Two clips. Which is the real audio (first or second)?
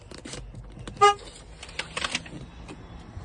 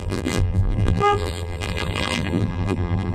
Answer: first